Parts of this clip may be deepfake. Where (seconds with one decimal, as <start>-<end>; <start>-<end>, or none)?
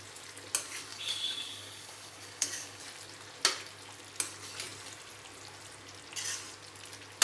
0.9-2.8